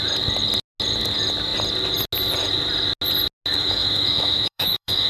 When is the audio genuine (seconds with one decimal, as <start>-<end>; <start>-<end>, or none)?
0.0-3.5